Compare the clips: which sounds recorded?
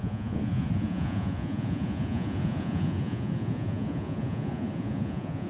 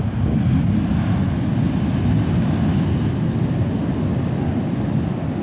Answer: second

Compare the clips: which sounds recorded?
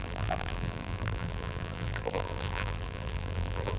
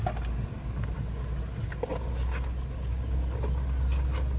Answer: second